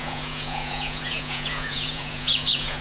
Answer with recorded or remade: remade